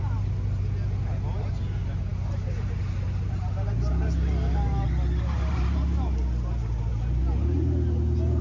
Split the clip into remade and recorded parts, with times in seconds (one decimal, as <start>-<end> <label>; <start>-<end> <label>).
0.0-8.4 recorded